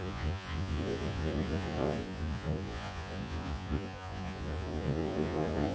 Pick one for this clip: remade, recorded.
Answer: remade